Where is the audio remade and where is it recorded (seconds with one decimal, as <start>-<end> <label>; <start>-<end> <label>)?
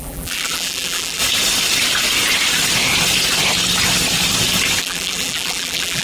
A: 0.0-1.2 remade; 1.2-4.8 recorded; 4.8-6.0 remade